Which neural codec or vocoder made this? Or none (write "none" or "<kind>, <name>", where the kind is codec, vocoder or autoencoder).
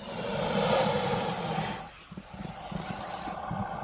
none